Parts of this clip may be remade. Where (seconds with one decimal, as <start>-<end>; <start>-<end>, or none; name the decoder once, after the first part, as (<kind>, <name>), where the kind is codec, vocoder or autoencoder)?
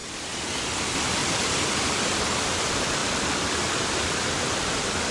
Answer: 0.6-5.1 (vocoder, BigVGAN v2)